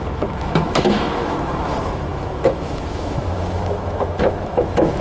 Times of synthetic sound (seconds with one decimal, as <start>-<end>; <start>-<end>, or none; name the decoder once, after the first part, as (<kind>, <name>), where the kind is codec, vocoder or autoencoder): 0.0-5.0 (autoencoder, DAC-VAE)